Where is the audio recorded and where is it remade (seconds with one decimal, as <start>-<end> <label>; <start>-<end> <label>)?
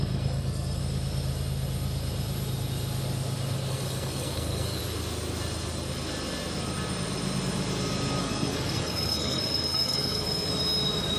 0.0-0.8 remade; 0.8-3.7 recorded; 3.7-4.8 remade; 4.8-8.2 recorded; 8.2-10.5 remade; 10.5-11.2 recorded